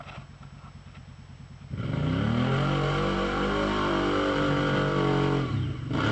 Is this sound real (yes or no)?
yes